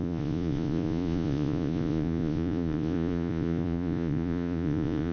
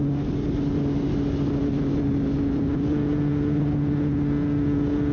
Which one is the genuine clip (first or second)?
second